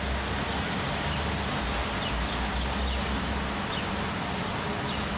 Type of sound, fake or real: real